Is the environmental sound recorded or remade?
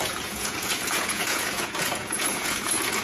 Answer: remade